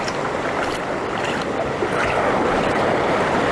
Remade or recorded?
recorded